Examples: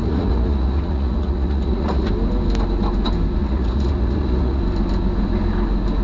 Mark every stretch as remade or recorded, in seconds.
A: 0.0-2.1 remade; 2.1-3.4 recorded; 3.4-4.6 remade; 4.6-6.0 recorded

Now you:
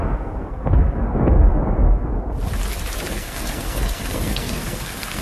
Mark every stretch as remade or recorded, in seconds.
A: 0.0-2.1 remade; 2.1-3.1 recorded; 3.1-5.2 remade